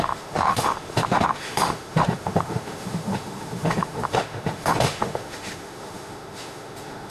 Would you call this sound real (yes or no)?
no